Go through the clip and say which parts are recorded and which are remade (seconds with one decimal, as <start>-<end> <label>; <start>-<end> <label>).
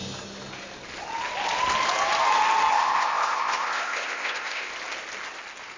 0.0-2.7 recorded; 2.7-4.7 remade; 4.7-5.8 recorded